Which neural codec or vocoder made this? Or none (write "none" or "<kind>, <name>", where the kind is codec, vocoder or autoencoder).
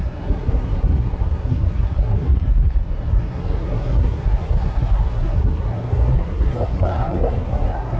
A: codec, SNAC